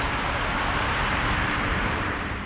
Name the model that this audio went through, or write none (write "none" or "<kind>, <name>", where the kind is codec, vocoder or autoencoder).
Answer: vocoder, BigVGAN v2